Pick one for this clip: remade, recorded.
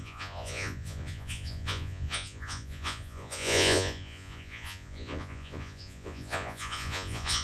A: remade